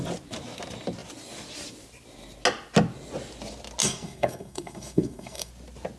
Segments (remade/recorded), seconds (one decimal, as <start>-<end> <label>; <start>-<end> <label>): 0.0-3.8 recorded; 3.8-5.5 remade; 5.5-6.0 recorded